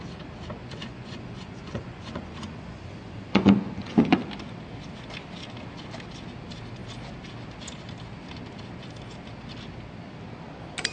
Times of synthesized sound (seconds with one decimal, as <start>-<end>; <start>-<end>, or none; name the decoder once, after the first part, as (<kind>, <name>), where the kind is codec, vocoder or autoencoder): 0.6-4.2 (vocoder, Vocos)